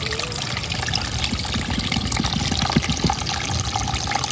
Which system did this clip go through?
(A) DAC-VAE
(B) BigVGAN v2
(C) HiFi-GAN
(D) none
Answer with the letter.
D